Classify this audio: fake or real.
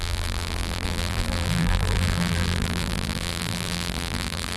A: fake